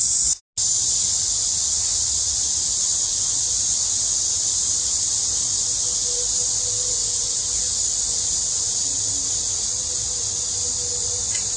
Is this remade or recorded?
recorded